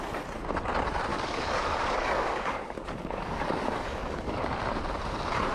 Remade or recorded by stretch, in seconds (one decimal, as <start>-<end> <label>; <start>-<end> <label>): 0.0-1.1 recorded; 1.1-4.4 remade; 4.4-5.5 recorded

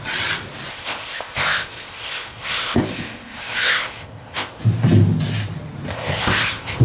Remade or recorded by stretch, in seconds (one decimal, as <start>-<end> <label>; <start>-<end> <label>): 0.0-0.7 recorded; 0.7-4.6 remade; 4.6-5.9 recorded; 5.9-6.8 remade

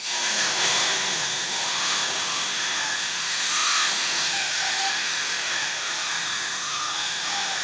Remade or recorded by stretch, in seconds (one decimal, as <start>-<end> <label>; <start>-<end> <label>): 0.0-7.6 remade

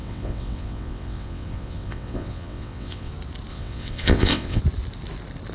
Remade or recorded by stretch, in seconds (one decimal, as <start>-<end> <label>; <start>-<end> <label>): 0.0-3.1 remade; 3.1-3.5 recorded; 3.5-4.6 remade; 4.6-5.5 recorded